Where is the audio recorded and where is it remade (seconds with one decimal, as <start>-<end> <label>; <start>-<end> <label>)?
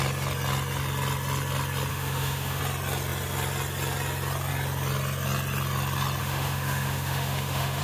0.0-1.9 recorded; 1.9-2.6 remade; 2.6-6.2 recorded; 6.2-7.8 remade